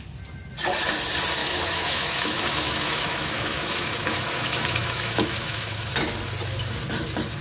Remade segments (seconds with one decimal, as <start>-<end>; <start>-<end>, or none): 1.4-5.8

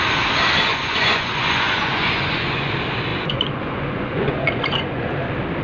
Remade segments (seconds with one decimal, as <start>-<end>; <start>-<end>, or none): 0.7-2.7; 3.1-5.1

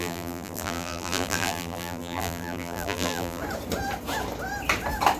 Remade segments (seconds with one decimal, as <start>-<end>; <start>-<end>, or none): 0.0-3.4

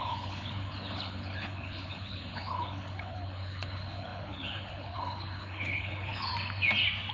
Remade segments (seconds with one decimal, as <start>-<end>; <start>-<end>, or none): 0.0-6.3

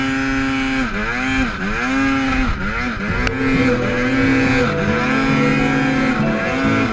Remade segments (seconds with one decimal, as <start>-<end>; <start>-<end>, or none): none

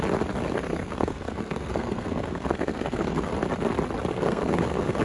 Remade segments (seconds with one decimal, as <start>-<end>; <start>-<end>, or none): 0.5-3.3; 4.1-5.0

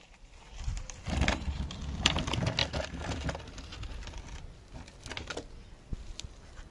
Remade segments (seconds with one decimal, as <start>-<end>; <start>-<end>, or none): none